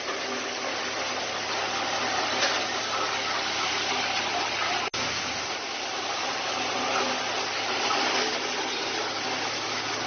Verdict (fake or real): real